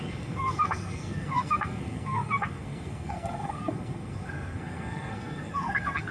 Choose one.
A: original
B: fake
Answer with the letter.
B